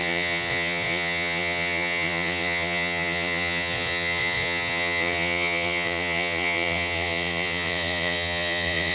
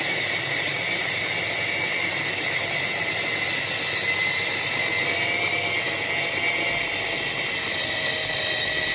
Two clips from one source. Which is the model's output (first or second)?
first